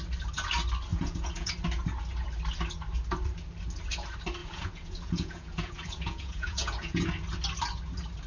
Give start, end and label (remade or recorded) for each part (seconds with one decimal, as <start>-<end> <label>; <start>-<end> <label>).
0.0-0.9 recorded; 0.9-1.5 remade; 1.5-4.4 recorded; 4.4-7.1 remade; 7.1-8.3 recorded